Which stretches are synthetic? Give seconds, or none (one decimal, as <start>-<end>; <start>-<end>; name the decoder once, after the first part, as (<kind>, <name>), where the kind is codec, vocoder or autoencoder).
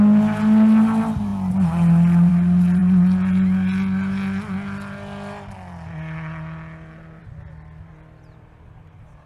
none